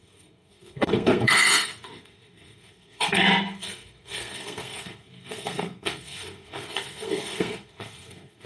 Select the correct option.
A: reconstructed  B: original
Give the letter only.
A